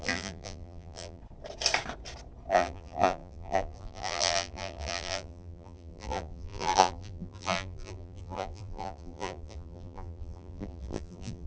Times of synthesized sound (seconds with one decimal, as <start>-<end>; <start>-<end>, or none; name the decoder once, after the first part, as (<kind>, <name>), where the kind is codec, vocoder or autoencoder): 0.0-1.2 (vocoder, BigVGAN v2); 2.5-11.5